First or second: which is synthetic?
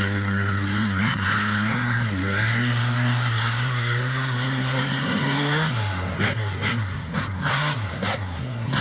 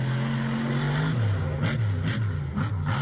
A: first